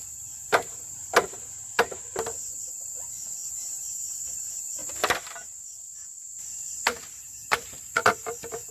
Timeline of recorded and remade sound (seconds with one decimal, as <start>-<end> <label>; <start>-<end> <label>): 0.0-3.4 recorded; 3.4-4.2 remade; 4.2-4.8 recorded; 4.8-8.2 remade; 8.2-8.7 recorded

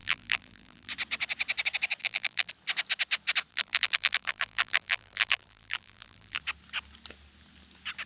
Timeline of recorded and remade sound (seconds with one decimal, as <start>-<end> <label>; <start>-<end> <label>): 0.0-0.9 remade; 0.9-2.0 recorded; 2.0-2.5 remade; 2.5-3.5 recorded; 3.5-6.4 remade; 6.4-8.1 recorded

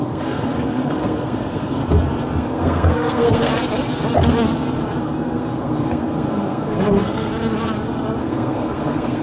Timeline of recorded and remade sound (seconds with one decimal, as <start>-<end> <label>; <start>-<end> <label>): 0.0-1.8 remade; 1.8-2.4 recorded; 2.4-3.5 remade; 3.5-5.0 recorded; 5.0-7.3 remade; 7.3-8.2 recorded; 8.2-9.2 remade

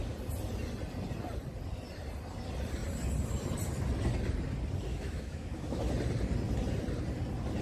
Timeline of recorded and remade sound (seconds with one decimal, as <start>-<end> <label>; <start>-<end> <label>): 0.0-4.9 recorded; 4.9-5.8 remade; 5.8-7.6 recorded

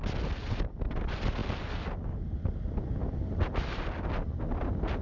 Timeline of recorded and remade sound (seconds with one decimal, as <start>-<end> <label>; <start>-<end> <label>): 0.0-5.0 recorded